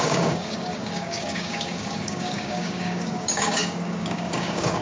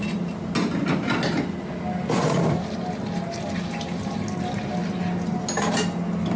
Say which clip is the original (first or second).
second